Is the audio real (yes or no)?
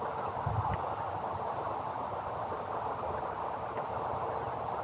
yes